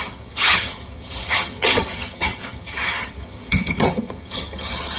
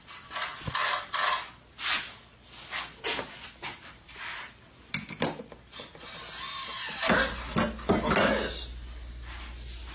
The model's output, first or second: first